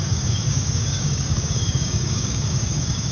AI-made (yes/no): yes